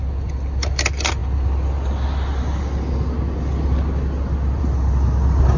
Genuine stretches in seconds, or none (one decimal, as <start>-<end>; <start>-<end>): 0.0-5.6